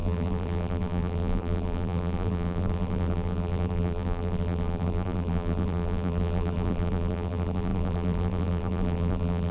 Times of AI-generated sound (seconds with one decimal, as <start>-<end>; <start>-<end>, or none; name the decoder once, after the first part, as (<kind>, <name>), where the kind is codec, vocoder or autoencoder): 0.0-9.5 (vocoder, BigVGAN v2)